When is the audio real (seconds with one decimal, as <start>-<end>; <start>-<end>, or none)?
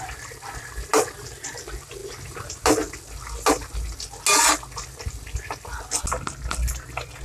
0.0-7.2